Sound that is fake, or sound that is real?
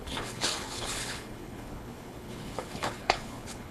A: fake